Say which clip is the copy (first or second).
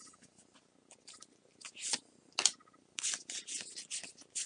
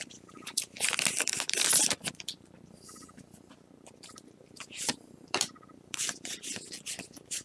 second